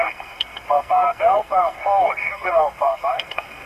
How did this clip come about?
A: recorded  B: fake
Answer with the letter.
B